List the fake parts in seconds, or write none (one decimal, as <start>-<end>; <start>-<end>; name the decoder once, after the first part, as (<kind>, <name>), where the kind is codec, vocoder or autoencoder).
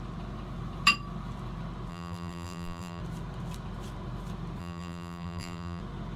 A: 1.9-3.0 (vocoder, BigVGAN v2); 4.6-5.8